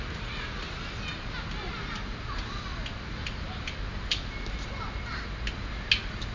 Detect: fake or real real